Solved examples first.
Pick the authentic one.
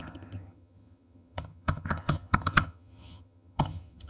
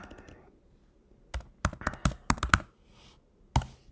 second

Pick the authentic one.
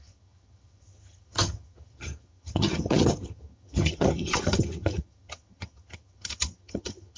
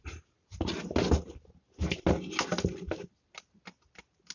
second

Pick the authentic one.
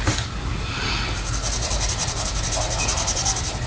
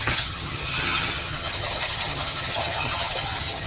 first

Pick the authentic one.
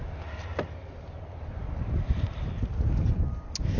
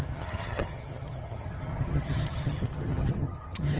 first